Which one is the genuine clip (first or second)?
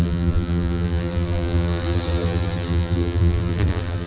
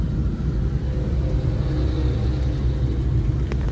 second